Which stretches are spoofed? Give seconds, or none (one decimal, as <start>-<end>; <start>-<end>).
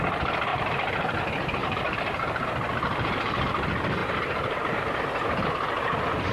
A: 0.5-1.2; 1.6-2.4; 2.9-3.4